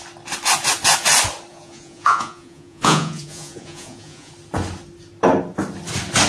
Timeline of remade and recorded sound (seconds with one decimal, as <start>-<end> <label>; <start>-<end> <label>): 0.0-1.5 recorded; 1.5-4.3 remade; 4.3-6.3 recorded